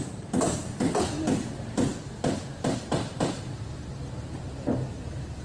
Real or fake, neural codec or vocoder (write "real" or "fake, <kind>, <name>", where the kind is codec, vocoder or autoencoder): fake, vocoder, BigVGAN v2